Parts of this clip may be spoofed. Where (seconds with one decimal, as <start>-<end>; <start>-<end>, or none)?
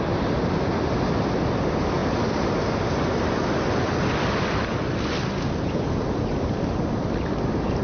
none